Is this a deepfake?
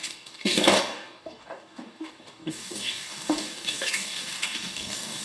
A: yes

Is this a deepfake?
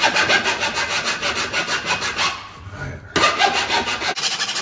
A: no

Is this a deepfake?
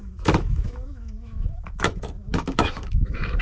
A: yes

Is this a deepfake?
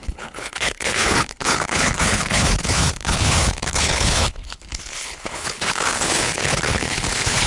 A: yes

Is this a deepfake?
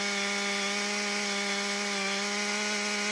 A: no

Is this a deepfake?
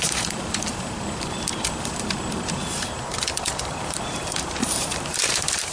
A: yes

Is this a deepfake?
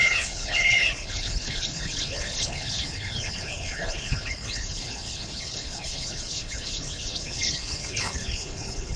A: yes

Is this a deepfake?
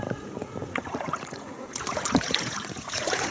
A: yes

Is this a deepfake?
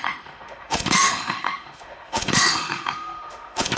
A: yes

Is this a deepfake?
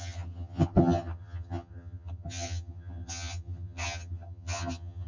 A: yes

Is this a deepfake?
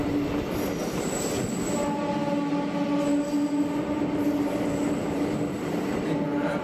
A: no